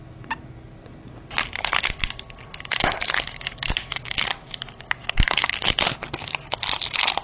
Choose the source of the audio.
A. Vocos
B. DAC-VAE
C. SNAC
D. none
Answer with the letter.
D